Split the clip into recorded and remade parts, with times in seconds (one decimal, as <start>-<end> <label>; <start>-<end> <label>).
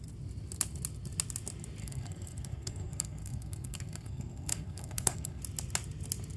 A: 0.0-1.8 recorded; 1.8-5.4 remade; 5.4-6.4 recorded